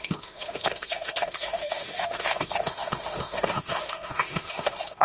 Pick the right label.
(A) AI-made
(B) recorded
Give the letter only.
A